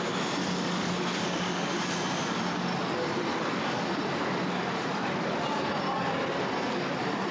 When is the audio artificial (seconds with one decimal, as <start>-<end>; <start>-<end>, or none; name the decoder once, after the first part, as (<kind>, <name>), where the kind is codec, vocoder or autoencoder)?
0.4-1.8 (codec, DAC); 3.3-3.8